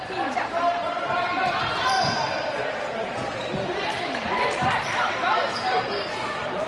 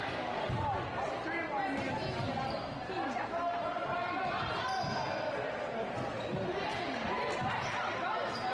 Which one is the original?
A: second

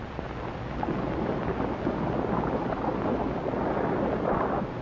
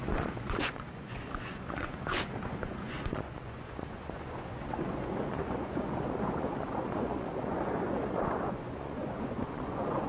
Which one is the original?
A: first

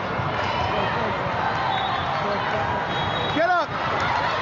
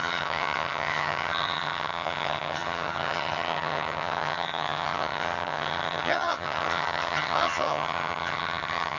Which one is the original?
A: first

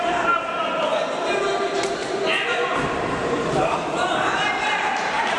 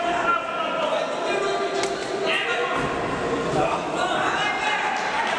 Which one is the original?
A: second